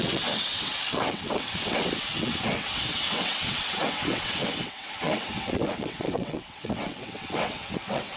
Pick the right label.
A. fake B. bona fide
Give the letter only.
A